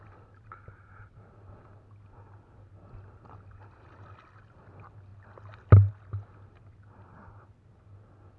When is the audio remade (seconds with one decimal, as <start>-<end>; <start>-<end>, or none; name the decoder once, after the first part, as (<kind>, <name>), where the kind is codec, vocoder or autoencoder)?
none